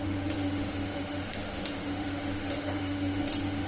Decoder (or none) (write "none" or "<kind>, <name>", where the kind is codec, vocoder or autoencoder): autoencoder, DAC-VAE